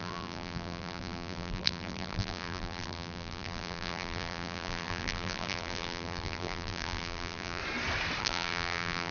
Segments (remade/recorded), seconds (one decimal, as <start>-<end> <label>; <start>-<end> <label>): 0.0-7.6 remade; 7.6-8.2 recorded; 8.2-9.1 remade